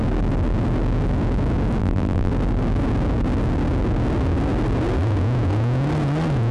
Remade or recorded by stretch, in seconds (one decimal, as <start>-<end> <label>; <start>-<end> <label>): 0.0-1.8 recorded; 1.8-2.3 remade; 2.3-6.5 recorded